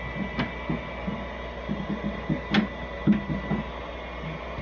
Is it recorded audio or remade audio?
recorded